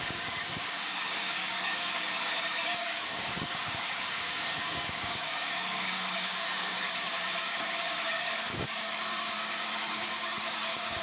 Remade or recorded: remade